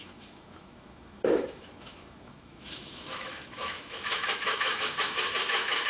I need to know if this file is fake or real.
fake